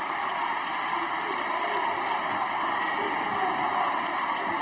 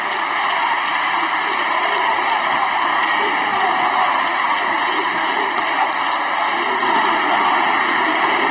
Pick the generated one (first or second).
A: second